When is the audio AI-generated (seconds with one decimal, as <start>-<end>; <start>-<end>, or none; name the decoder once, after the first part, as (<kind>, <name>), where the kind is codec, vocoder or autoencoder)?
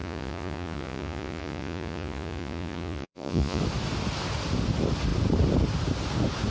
0.0-3.6 (vocoder, Vocos)